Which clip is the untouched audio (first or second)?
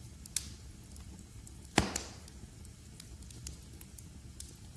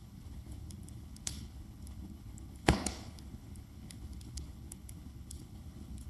first